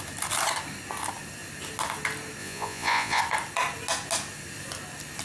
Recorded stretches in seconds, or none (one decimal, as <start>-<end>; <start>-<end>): 0.0-2.4; 3.2-5.2